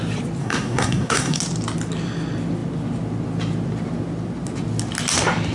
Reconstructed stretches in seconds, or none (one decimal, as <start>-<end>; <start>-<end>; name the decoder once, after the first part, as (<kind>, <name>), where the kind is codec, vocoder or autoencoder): 0.4-1.4 (codec, SNAC)